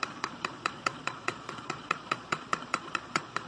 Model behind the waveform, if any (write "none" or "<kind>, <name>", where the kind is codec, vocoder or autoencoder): vocoder, Vocos